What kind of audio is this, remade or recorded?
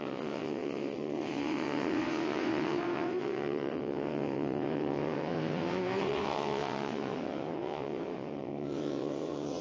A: remade